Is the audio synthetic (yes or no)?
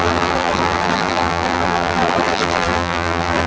yes